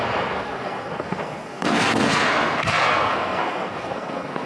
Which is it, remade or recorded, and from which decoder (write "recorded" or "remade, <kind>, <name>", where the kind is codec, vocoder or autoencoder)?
remade, codec, SNAC